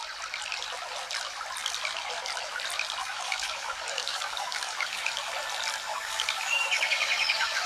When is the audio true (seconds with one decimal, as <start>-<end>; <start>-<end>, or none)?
0.0-3.0; 5.3-5.9